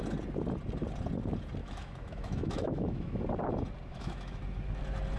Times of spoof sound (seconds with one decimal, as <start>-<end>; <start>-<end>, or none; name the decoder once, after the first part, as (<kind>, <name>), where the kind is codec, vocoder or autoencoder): 1.6-3.2 (autoencoder, DAC-VAE); 3.9-4.4